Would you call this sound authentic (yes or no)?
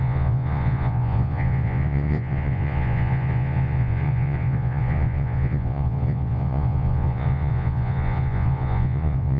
no